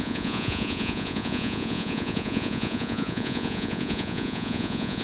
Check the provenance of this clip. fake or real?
fake